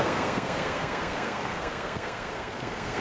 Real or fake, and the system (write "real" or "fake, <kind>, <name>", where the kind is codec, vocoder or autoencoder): fake, codec, SNAC